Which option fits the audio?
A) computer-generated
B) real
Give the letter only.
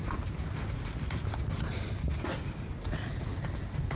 B